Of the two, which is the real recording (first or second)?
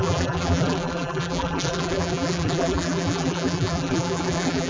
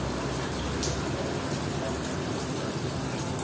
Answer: second